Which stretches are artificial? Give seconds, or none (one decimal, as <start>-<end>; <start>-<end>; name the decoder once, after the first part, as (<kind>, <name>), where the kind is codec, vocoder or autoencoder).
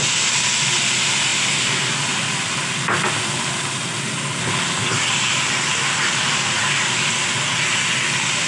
none